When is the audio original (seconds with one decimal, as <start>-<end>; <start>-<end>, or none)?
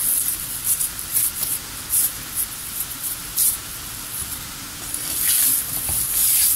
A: none